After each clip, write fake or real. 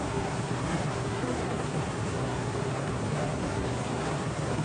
fake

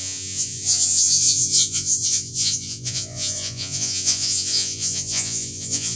fake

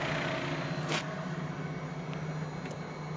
real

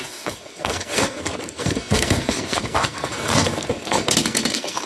fake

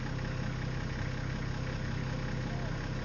real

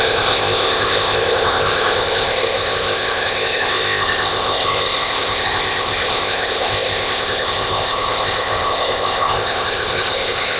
fake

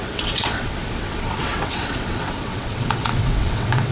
fake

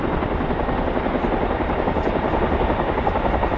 real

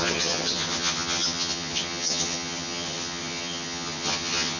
fake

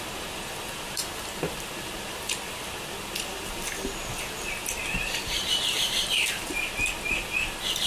real